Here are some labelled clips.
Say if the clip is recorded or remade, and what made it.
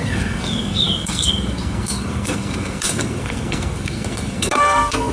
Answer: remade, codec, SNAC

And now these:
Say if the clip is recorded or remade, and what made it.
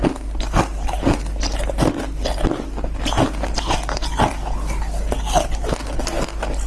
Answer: recorded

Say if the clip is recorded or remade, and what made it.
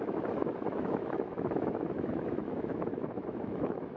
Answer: remade, autoencoder, DAC-VAE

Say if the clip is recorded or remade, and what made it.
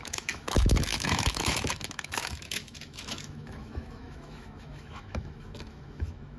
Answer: remade, autoencoder, DAC-VAE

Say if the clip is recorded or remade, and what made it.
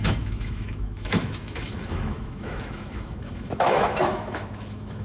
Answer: remade, autoencoder, DAC-VAE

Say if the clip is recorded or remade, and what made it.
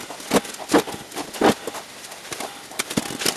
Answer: recorded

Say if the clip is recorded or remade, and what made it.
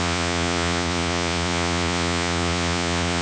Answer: remade, vocoder, Vocos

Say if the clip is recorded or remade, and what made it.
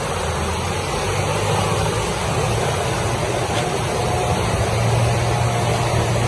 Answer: recorded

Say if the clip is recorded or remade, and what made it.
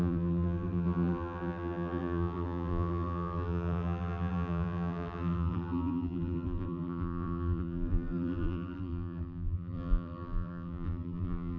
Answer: remade, vocoder, BigVGAN v2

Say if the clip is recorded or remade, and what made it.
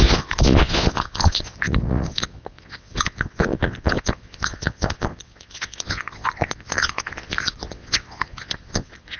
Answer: remade, vocoder, Vocos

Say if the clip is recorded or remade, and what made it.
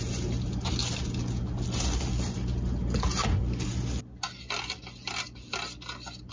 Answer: recorded